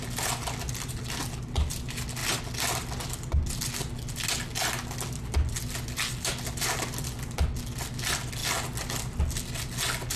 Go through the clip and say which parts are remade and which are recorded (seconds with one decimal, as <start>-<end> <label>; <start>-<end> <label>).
0.0-10.2 recorded